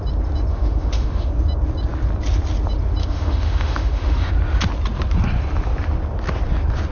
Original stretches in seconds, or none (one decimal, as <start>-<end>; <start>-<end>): 0.0-0.5; 1.3-3.0; 4.3-6.9